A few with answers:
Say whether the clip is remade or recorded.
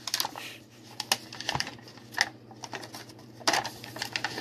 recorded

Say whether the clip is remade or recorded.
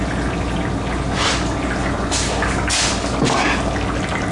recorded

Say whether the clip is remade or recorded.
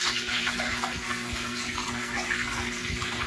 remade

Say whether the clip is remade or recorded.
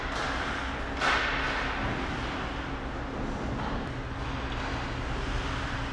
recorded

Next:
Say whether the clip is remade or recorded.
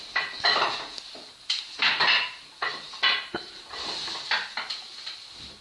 recorded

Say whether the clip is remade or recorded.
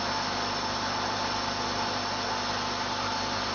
recorded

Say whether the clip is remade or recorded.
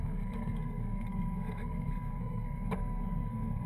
remade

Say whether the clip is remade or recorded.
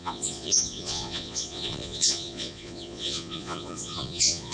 remade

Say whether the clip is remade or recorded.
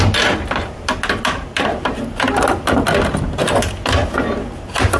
recorded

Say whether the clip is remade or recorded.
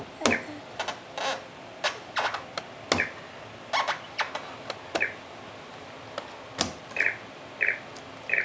recorded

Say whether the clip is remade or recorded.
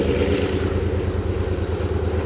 recorded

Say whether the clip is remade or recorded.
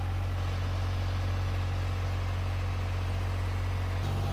recorded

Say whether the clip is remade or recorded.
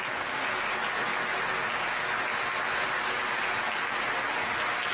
recorded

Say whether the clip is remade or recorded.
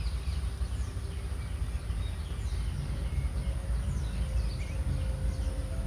recorded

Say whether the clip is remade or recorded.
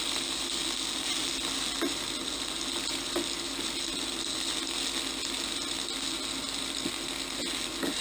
recorded